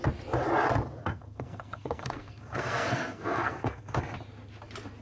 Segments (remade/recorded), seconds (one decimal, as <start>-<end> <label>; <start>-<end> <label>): 0.0-1.0 recorded; 1.0-4.0 remade; 4.0-5.0 recorded